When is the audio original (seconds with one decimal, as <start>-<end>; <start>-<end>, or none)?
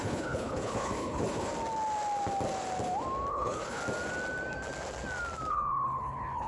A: 1.5-3.3; 3.8-5.5